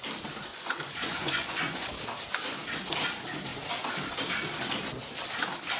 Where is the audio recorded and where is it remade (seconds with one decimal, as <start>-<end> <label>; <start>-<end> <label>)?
0.0-0.5 recorded; 0.5-1.9 remade; 1.9-5.8 recorded